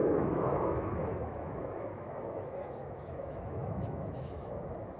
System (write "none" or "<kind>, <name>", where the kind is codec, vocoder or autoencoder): autoencoder, DAC-VAE